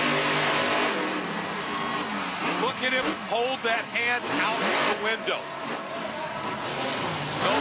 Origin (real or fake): real